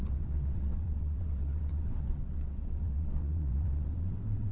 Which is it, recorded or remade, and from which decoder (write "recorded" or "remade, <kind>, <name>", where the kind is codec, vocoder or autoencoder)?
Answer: remade, vocoder, WaveNeXt